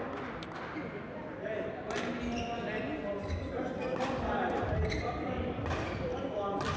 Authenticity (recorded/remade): recorded